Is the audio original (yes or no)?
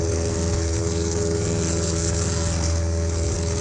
no